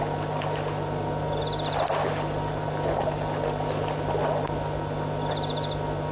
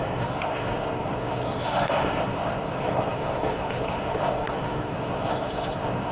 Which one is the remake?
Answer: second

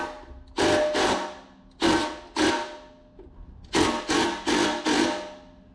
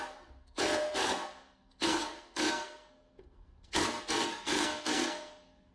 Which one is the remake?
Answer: second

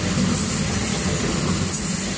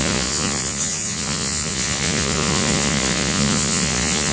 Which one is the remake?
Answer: second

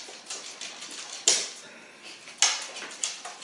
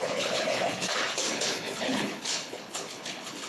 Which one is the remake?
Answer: second